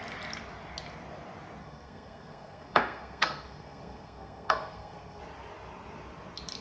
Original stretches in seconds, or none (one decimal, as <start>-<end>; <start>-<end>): 0.0-1.6; 5.2-6.6